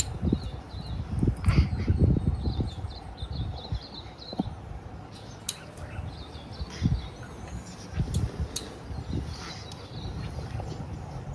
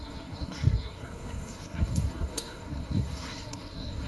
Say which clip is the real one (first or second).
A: first